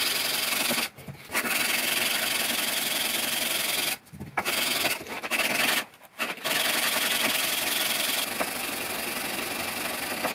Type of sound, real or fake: fake